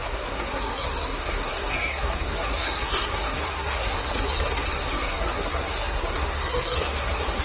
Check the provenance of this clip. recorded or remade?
remade